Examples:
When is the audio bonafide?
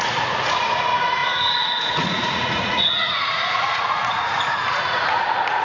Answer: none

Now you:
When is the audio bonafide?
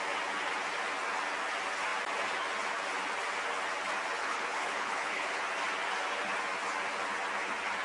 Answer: 0.0-4.2; 5.4-7.8